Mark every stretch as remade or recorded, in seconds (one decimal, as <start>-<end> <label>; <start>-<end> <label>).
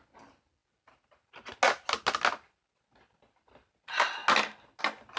0.0-5.2 recorded